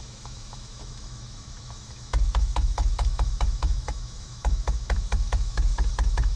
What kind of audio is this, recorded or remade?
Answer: remade